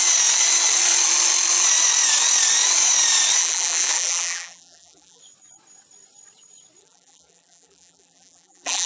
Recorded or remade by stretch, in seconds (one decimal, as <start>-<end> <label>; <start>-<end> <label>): 0.0-3.4 recorded; 3.4-5.2 remade; 5.2-6.8 recorded; 6.8-8.9 remade